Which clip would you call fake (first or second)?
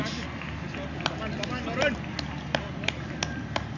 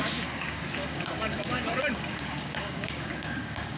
second